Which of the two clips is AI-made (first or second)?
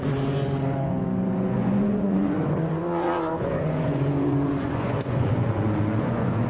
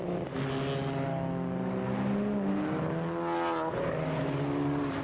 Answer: first